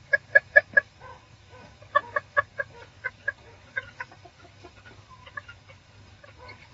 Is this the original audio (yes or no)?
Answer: no